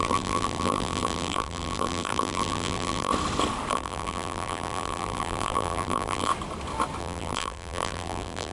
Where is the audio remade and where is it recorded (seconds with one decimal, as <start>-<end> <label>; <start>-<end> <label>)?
0.0-3.1 remade; 3.1-3.7 recorded; 3.7-6.3 remade; 6.3-7.0 recorded; 7.0-8.5 remade